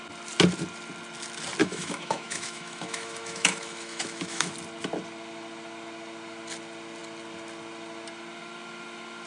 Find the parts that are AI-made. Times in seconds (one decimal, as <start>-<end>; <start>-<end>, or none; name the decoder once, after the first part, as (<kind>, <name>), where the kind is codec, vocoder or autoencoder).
1.6-4.5 (autoencoder, DAC-VAE)